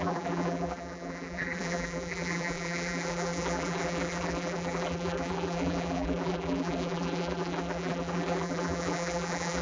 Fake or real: fake